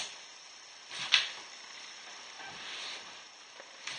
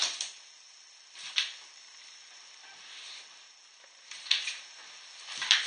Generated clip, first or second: first